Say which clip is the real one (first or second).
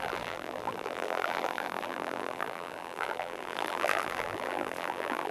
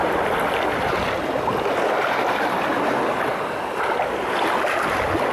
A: second